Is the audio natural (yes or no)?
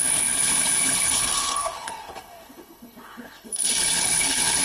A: no